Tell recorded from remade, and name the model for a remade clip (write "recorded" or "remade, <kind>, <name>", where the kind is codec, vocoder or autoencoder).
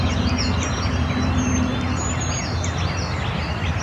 recorded